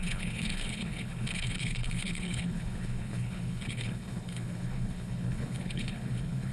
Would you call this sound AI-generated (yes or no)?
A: yes